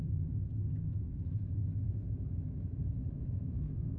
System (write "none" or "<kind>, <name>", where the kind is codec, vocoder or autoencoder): autoencoder, DAC-VAE